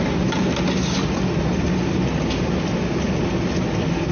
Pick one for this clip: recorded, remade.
recorded